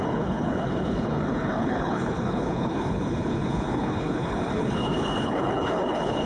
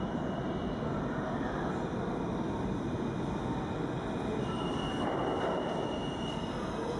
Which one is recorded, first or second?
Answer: second